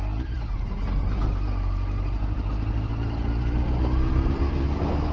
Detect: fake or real real